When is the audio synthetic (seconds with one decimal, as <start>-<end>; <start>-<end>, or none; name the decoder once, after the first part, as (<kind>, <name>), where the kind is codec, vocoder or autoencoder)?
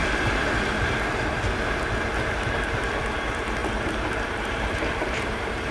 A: 3.0-5.7 (vocoder, BigVGAN v2)